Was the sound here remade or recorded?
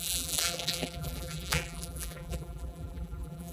remade